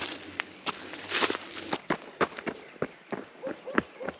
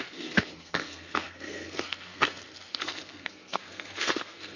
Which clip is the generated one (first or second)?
second